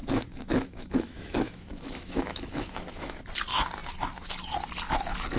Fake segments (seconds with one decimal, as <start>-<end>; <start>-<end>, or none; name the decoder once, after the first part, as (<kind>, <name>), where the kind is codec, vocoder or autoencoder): 0.0-3.2 (autoencoder, DAC-VAE)